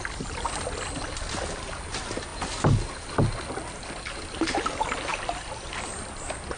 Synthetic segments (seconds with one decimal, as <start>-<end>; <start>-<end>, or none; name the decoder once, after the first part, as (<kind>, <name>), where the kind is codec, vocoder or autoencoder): none